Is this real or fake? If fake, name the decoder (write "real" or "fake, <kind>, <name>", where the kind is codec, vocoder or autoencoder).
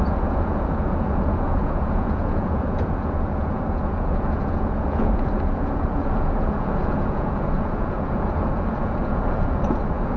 fake, vocoder, Vocos